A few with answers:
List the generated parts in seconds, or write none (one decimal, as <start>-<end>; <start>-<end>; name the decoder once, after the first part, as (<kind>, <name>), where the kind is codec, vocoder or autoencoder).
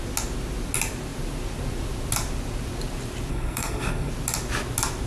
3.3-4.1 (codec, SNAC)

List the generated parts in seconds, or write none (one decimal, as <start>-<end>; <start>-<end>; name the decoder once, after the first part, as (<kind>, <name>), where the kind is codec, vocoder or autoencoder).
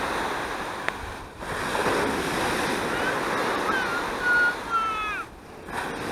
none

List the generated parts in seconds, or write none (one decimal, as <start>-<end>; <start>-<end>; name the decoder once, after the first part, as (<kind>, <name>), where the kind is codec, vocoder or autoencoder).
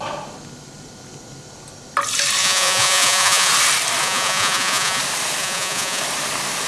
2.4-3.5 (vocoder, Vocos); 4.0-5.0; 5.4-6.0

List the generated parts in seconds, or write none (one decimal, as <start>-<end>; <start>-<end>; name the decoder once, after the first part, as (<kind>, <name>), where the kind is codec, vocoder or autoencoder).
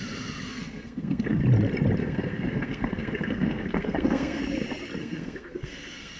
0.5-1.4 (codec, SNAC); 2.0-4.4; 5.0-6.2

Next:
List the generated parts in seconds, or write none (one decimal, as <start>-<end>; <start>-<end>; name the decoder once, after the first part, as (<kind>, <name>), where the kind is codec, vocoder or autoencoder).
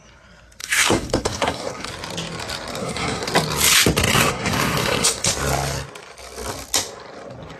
0.6-1.9 (codec, SNAC); 2.8-3.3; 4.1-5.3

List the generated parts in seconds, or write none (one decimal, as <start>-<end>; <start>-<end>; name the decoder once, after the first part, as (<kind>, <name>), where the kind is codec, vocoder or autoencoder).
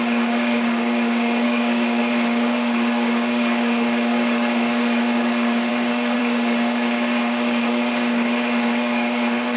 0.0-9.6 (codec, DAC)